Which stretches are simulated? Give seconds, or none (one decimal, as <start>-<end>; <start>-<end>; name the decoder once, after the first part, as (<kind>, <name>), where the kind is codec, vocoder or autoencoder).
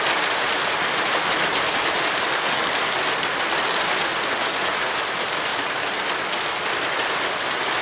4.1-4.9 (vocoder, Vocos)